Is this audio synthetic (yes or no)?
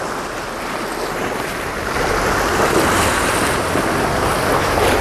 no